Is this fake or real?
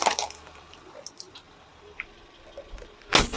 real